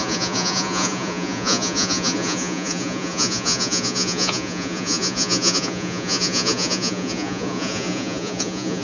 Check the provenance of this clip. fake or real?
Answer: fake